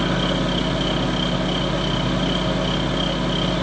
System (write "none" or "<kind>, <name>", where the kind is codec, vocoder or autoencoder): none